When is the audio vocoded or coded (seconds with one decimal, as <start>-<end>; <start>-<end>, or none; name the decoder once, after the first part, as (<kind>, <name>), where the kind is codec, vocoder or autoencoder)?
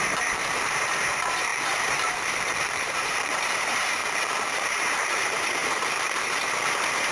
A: 0.0-4.0 (vocoder, BigVGAN v2); 4.5-7.1